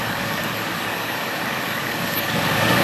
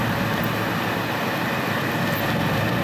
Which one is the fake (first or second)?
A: first